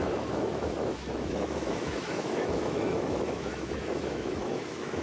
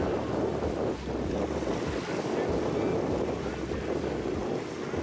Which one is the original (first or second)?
second